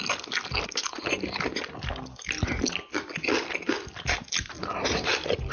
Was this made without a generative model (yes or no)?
yes